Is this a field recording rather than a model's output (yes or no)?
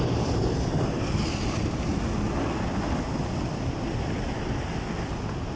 yes